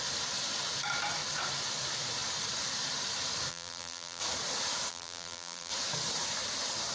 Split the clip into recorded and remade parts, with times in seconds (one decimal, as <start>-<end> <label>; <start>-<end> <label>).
0.0-3.5 recorded; 3.5-4.2 remade; 4.2-4.9 recorded; 4.9-5.7 remade; 5.7-6.9 recorded